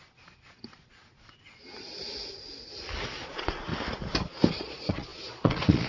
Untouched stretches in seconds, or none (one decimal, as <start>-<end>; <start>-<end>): 1.5-3.2; 3.7-4.5